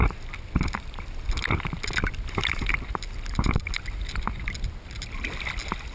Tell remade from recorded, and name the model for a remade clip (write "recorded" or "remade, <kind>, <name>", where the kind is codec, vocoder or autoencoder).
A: recorded